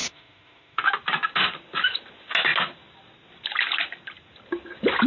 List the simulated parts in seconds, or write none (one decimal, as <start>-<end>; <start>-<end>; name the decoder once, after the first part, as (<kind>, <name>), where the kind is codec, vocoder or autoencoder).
0.0-0.9 (autoencoder, DAC-VAE)